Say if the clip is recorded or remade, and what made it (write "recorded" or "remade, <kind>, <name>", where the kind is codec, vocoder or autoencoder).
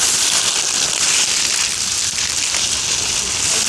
recorded